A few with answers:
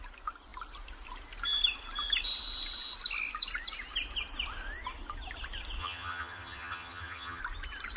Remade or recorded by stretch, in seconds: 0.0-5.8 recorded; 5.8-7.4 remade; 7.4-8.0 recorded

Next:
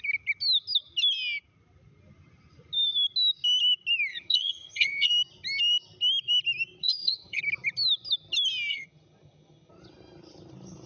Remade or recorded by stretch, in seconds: 0.0-4.1 recorded; 4.1-5.1 remade; 5.1-6.8 recorded; 6.8-7.4 remade; 7.4-8.7 recorded; 8.7-9.7 remade; 9.7-10.9 recorded

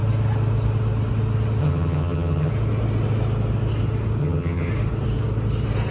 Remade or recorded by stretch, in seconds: 0.0-1.6 recorded; 1.6-2.5 remade; 2.5-4.2 recorded; 4.2-4.7 remade; 4.7-5.9 recorded

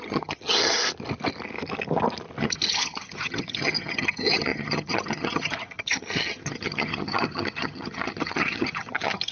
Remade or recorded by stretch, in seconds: 0.0-0.8 remade; 0.8-2.4 recorded; 2.4-9.3 remade